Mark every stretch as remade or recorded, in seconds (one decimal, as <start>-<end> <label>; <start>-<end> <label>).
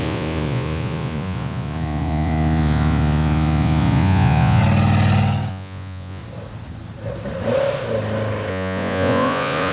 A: 0.0-4.6 remade; 4.6-5.5 recorded; 5.5-6.2 remade; 6.2-8.5 recorded; 8.5-9.7 remade